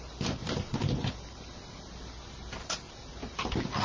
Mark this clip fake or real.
real